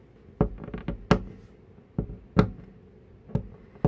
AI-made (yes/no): no